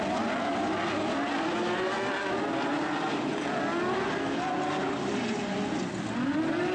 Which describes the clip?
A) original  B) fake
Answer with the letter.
A